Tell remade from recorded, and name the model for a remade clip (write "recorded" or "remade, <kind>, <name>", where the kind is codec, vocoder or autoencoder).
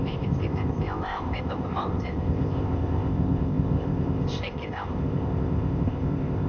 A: remade, codec, ZipCodec